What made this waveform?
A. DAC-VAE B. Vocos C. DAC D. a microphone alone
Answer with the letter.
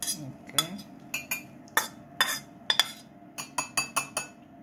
D